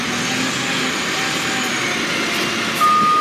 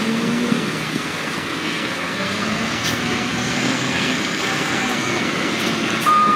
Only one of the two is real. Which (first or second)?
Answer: first